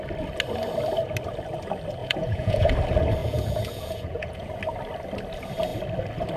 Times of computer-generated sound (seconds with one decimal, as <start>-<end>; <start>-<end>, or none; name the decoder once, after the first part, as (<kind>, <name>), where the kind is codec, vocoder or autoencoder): 2.0-2.7 (vocoder, Vocos); 3.2-4.6